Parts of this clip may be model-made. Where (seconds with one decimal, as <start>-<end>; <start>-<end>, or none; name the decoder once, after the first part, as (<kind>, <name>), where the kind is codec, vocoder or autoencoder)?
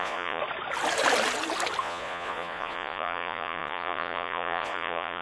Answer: 0.0-0.4 (vocoder, Vocos); 1.8-5.2